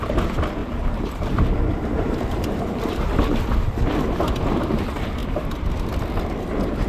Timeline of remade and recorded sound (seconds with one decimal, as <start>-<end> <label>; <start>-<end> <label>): 0.0-0.6 recorded; 0.6-3.7 remade; 3.7-5.2 recorded; 5.2-5.7 remade; 5.7-6.9 recorded